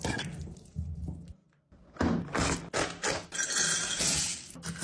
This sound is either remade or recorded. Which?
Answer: recorded